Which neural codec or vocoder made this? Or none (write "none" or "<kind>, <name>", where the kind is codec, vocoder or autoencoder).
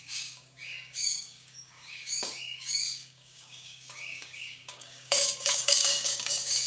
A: codec, DAC